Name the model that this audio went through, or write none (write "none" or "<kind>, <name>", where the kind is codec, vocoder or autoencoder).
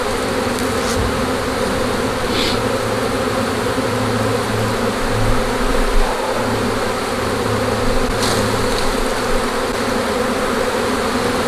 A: none